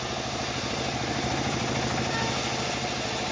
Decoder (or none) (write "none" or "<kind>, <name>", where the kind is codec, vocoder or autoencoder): none